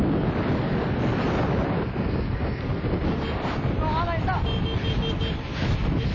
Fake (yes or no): no